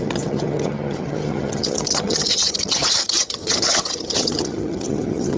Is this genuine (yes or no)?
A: no